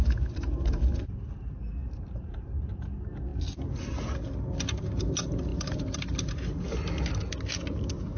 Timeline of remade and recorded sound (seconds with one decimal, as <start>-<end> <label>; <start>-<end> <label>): 0.0-1.8 recorded; 1.8-2.7 remade; 2.7-5.5 recorded; 5.5-6.1 remade; 6.1-8.2 recorded